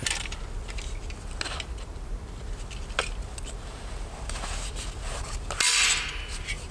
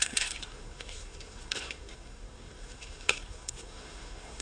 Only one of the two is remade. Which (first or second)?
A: second